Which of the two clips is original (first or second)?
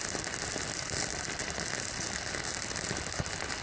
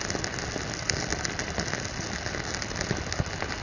second